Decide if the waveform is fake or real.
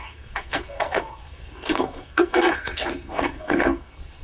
fake